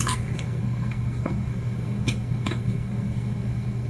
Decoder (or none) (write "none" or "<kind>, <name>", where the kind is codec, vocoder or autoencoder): codec, SNAC